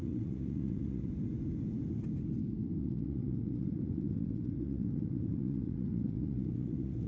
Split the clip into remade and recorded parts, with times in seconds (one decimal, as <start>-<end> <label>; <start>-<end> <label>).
0.0-1.1 remade; 1.1-2.8 recorded; 2.8-7.1 remade